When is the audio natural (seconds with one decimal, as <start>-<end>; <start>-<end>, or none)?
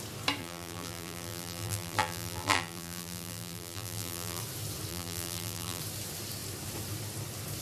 0.0-0.4; 4.4-4.9; 5.8-7.6